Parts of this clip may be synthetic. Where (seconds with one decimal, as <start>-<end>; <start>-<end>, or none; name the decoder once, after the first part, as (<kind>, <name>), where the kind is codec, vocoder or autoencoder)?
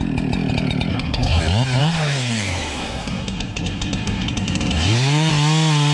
0.9-1.4 (codec, SNAC); 1.8-5.3